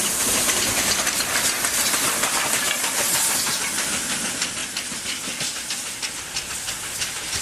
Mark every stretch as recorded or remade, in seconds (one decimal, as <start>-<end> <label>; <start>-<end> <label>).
0.0-7.4 recorded

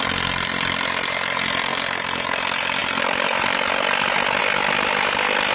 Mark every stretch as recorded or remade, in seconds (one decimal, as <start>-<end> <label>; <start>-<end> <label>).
0.0-5.5 recorded

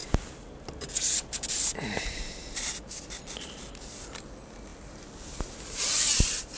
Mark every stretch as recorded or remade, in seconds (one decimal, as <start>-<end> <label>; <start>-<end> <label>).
0.0-6.6 recorded

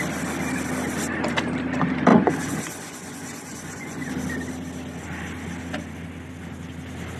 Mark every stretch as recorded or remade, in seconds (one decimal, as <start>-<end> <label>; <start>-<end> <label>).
0.0-2.1 recorded; 2.1-4.1 remade; 4.1-7.2 recorded

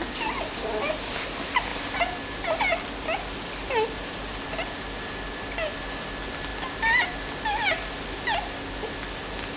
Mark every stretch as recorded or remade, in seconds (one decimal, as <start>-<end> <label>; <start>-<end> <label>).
0.0-9.6 recorded